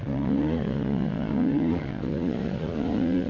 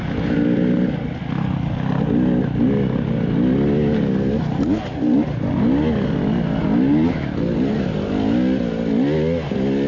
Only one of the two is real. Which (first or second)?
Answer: second